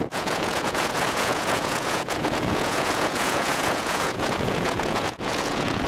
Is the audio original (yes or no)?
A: no